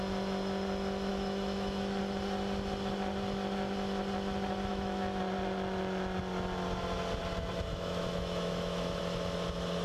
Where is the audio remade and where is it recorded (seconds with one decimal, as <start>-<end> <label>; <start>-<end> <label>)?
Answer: 0.0-1.1 recorded; 1.1-2.0 remade; 2.0-4.7 recorded; 4.7-5.2 remade; 5.2-7.7 recorded; 7.7-9.0 remade; 9.0-9.8 recorded